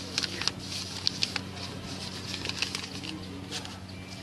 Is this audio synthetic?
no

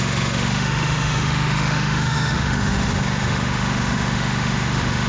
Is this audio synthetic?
yes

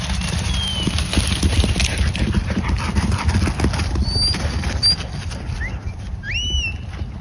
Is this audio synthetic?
no